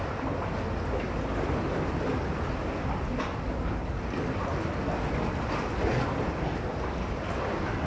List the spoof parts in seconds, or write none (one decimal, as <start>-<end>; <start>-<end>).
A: none